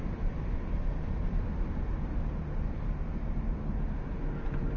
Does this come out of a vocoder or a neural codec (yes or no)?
yes